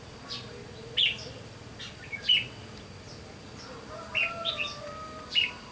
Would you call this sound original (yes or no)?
yes